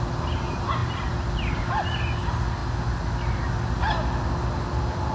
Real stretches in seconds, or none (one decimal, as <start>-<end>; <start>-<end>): 0.0-5.1